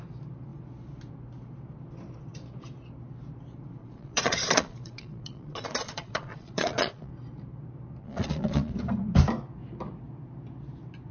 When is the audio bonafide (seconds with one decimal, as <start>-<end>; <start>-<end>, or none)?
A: 0.0-3.8; 7.1-8.0; 8.7-11.1